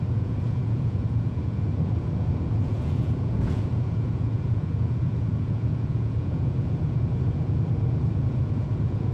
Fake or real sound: fake